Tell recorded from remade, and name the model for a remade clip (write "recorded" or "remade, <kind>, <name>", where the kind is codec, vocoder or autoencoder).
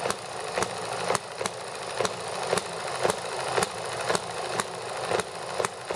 recorded